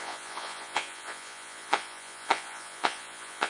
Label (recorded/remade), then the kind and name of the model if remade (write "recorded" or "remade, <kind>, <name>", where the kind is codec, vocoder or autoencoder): remade, vocoder, Vocos